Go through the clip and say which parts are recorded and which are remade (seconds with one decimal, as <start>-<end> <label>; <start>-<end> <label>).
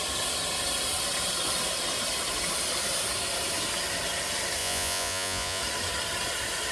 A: 0.0-4.6 recorded; 4.6-5.6 remade; 5.6-6.7 recorded